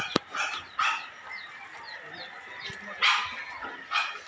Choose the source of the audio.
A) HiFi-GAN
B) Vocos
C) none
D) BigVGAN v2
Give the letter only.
C